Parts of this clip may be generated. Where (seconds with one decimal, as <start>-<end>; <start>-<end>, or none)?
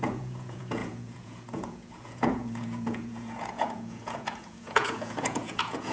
0.0-5.9